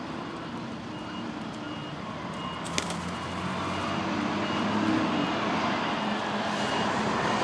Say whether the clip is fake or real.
real